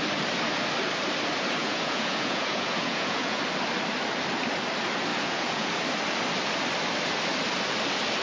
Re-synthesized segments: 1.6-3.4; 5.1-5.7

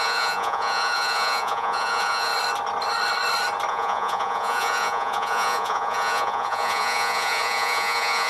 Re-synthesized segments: 0.0-2.3; 3.7-8.3